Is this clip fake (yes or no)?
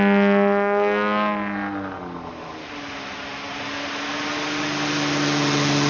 no